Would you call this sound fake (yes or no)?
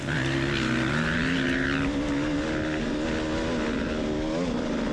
no